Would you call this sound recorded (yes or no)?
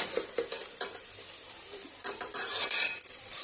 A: no